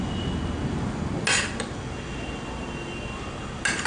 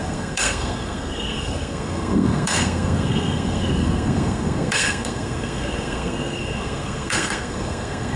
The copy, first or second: second